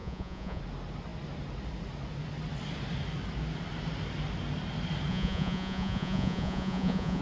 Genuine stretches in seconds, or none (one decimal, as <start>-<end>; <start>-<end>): 0.6-5.1